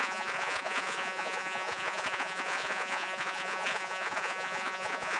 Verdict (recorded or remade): remade